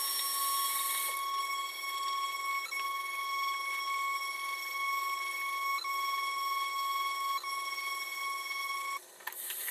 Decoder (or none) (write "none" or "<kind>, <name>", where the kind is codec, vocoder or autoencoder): none